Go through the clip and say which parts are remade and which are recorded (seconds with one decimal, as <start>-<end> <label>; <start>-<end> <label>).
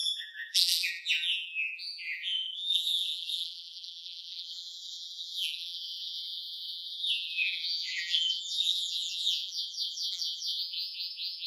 0.0-11.5 remade